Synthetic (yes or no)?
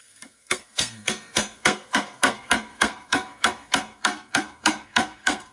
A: yes